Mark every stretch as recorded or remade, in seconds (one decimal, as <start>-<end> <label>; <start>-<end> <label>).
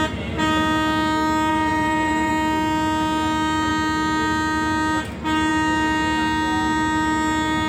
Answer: 0.0-1.5 recorded; 1.5-2.3 remade; 2.3-7.7 recorded